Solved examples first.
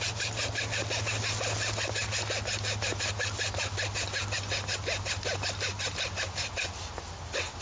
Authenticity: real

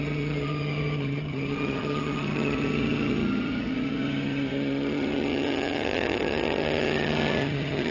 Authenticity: fake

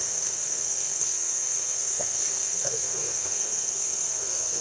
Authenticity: fake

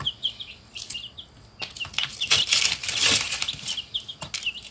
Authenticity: real